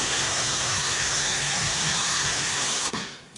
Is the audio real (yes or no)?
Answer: no